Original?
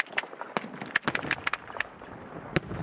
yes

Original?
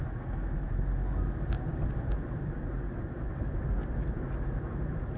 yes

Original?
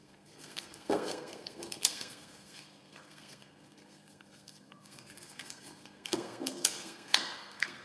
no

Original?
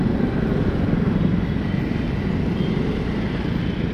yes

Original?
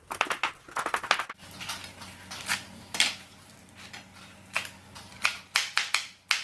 yes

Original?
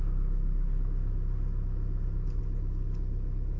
yes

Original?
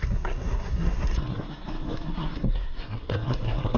no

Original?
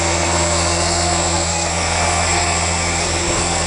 no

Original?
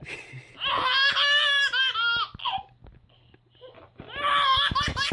yes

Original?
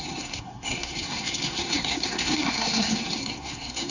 no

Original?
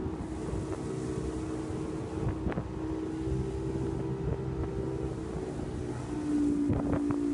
yes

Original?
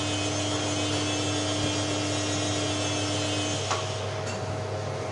yes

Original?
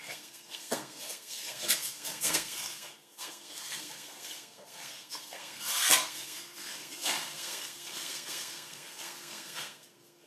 no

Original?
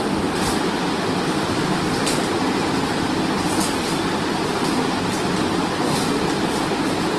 yes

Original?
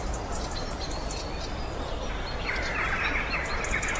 yes